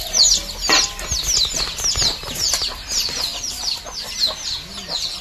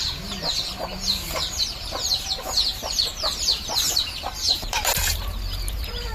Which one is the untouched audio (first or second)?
first